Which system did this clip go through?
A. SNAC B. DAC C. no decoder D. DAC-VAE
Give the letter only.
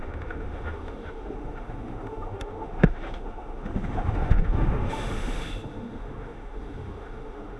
D